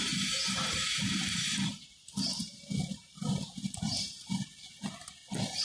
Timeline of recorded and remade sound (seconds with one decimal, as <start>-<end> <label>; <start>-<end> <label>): 0.0-2.6 remade; 2.6-3.4 recorded; 3.4-4.4 remade; 4.4-5.6 recorded